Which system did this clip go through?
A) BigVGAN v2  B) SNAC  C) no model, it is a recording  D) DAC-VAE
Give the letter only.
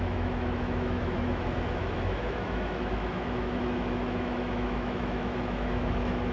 D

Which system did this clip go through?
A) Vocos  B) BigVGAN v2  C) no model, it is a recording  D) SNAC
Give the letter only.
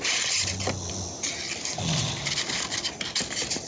C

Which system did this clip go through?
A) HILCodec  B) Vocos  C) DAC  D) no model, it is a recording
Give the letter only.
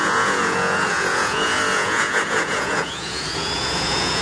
B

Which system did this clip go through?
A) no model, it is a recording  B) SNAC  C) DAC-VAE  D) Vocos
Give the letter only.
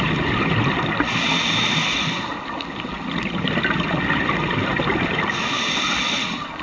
A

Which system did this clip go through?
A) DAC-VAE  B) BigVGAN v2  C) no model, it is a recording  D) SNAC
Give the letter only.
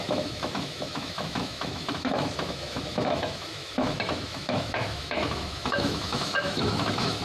A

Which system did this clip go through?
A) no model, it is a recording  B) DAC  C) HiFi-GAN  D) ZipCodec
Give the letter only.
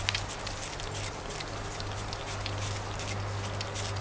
A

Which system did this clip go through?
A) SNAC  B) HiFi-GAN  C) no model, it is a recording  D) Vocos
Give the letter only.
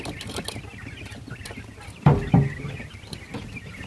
C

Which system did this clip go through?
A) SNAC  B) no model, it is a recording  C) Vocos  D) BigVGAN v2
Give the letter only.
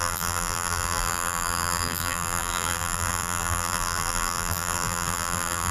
D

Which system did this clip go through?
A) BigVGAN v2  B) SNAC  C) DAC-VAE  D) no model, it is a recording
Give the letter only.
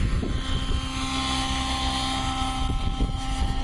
D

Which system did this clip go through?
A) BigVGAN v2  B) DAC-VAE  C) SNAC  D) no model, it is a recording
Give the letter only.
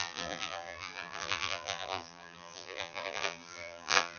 A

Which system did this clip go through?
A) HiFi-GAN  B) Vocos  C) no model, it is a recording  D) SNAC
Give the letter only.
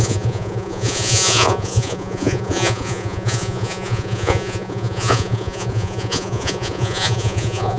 B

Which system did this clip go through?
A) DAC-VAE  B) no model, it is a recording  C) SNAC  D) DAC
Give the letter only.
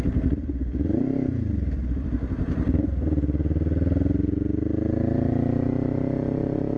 B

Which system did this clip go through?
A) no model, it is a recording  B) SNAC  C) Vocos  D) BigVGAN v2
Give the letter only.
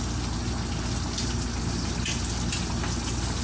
A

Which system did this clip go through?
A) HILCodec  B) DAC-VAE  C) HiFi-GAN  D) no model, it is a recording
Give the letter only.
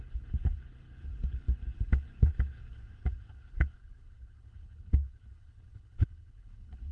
A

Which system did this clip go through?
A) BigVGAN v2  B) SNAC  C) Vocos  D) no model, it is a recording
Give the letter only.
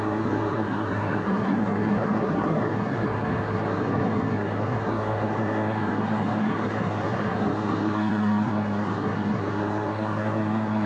B